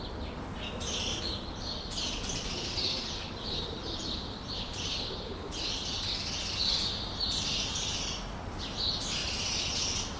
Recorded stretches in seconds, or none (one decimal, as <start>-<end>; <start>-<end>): 0.0-1.1; 5.5-10.2